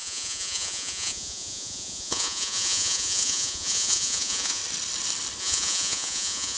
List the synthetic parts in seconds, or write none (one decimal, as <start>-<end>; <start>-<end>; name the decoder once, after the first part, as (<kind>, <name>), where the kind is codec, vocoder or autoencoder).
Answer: 0.0-4.6 (vocoder, Vocos); 5.4-6.6